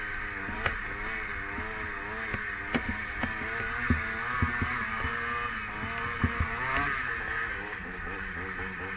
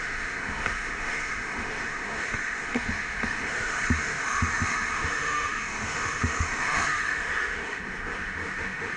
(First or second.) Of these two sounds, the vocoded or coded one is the second